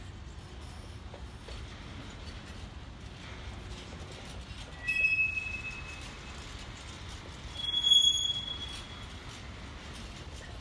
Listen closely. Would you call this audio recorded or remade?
recorded